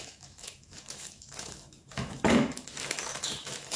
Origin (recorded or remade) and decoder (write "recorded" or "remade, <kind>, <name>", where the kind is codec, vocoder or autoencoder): remade, autoencoder, DAC-VAE